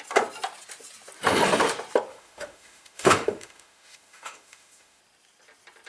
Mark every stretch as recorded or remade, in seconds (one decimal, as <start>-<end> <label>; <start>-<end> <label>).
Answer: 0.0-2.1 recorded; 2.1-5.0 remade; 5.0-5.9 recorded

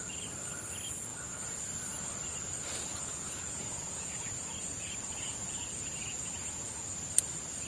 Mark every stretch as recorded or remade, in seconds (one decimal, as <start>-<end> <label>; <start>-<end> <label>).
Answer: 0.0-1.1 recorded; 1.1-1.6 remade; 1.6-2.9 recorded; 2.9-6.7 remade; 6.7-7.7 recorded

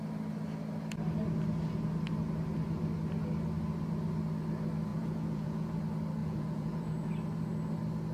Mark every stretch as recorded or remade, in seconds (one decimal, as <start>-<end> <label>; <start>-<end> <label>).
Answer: 0.0-4.9 recorded; 4.9-5.8 remade; 5.8-6.2 recorded; 6.2-7.1 remade; 7.1-8.1 recorded